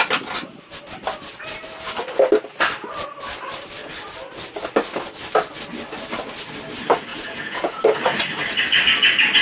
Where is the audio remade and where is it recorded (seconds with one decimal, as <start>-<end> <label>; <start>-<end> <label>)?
0.0-7.1 recorded; 7.1-7.8 remade; 7.8-9.4 recorded